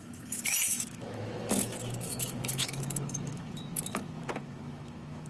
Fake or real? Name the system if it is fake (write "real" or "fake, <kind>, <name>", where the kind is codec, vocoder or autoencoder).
fake, autoencoder, DAC-VAE